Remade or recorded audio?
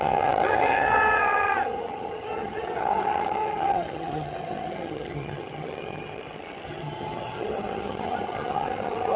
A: remade